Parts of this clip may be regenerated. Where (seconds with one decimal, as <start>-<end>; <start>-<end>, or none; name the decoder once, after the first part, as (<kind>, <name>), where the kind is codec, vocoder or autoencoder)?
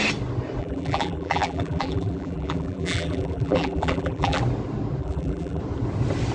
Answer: 0.6-4.4 (vocoder, BigVGAN v2); 5.0-5.6